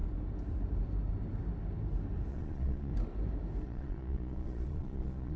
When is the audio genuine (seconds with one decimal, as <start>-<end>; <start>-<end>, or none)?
0.0-2.3; 2.9-3.6